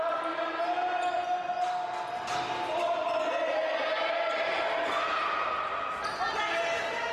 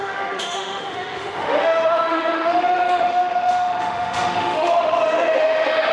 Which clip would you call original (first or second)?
first